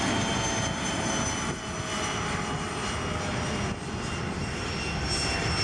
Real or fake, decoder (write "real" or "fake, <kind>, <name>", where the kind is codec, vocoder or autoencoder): real